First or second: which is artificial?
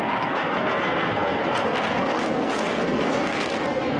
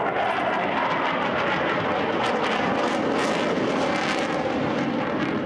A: first